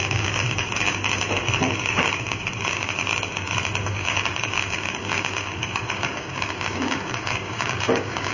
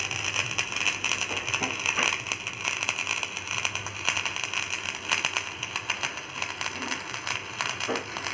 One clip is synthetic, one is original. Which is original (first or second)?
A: second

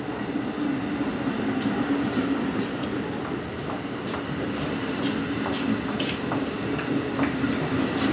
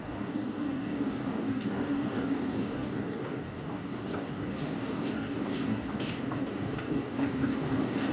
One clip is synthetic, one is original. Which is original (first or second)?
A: first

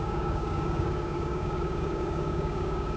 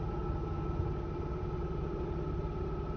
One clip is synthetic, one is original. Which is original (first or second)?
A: second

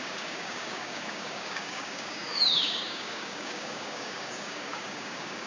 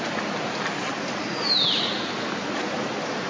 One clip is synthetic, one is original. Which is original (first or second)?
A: second